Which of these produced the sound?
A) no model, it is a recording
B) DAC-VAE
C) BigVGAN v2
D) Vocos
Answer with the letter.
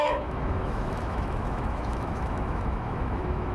B